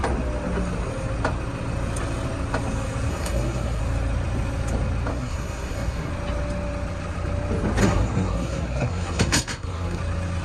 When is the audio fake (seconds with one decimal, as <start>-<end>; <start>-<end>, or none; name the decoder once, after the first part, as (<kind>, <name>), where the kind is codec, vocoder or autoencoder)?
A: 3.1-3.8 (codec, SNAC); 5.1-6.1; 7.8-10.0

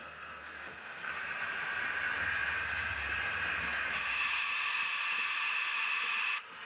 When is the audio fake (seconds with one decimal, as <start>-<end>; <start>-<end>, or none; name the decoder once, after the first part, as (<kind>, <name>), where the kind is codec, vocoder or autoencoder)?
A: 0.0-1.1 (codec, SNAC)

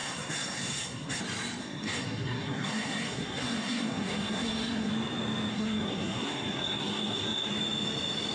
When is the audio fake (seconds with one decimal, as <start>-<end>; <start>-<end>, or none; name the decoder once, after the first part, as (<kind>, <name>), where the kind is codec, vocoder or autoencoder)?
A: 0.0-1.2 (codec, SNAC); 1.6-4.9; 5.5-7.5

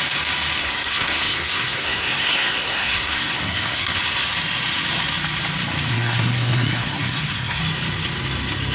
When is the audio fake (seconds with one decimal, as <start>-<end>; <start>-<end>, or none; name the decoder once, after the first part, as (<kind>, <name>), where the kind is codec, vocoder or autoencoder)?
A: 0.6-4.0 (codec, SNAC); 5.9-7.6

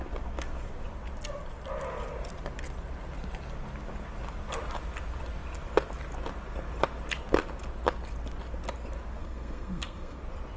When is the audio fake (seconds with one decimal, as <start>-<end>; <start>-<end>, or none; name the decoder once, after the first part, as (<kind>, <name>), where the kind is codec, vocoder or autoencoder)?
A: 9.2-10.2 (codec, SNAC)

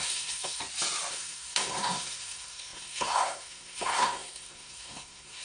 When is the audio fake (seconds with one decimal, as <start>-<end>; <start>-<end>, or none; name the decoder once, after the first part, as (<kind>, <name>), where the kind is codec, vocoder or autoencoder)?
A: 0.0-0.6 (codec, SNAC); 1.1-5.4